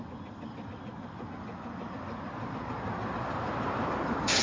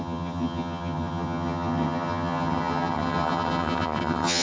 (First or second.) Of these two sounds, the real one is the first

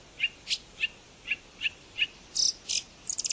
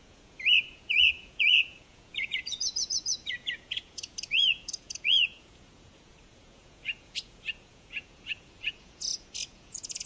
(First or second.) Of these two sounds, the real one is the first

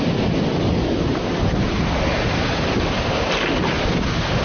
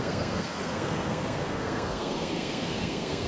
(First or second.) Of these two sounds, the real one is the first